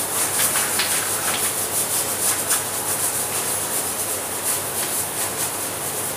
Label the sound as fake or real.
real